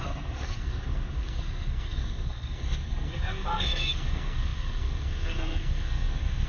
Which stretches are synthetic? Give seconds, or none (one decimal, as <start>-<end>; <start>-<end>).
0.0-6.5